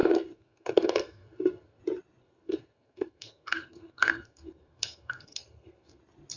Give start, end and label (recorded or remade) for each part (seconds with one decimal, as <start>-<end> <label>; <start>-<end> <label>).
0.0-1.8 remade; 1.8-2.2 recorded; 2.2-6.0 remade; 6.0-6.4 recorded